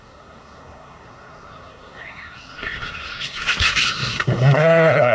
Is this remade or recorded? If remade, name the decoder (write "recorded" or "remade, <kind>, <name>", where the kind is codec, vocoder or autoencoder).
remade, codec, SNAC